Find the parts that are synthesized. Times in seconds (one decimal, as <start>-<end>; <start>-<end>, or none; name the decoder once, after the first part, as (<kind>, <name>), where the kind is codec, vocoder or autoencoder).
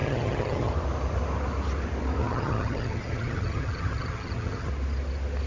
0.0-0.7 (vocoder, HiFi-GAN); 2.2-4.7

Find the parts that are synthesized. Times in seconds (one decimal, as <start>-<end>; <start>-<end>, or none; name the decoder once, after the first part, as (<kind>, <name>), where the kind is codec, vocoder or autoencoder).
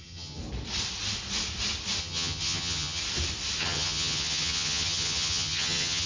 0.0-0.4 (vocoder, HiFi-GAN); 2.0-3.0; 3.6-6.1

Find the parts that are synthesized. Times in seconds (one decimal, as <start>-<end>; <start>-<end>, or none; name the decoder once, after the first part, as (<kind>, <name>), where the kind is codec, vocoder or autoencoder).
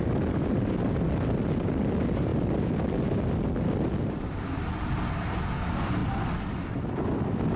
none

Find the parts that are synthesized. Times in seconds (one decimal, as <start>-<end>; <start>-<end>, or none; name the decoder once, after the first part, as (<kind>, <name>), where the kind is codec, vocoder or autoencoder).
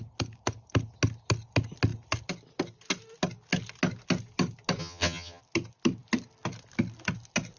4.8-5.4 (vocoder, HiFi-GAN)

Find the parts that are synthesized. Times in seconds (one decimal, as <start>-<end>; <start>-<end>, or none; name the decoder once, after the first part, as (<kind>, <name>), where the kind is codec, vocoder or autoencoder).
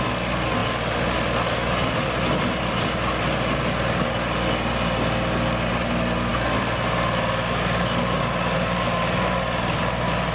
none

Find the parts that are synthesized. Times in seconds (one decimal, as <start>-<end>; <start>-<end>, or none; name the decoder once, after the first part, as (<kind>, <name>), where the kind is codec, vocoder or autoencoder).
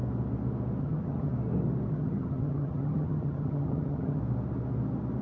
0.8-1.3 (vocoder, HiFi-GAN); 1.9-4.2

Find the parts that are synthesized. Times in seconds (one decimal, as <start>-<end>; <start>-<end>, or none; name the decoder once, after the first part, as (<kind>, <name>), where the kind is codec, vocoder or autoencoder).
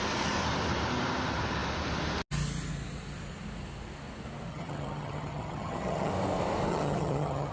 4.5-6.1 (vocoder, HiFi-GAN); 6.7-7.5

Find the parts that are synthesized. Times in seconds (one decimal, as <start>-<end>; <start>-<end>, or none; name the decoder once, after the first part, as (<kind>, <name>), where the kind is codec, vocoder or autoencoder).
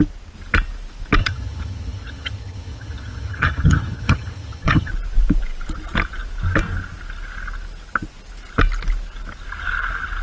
1.2-4.9 (vocoder, HiFi-GAN)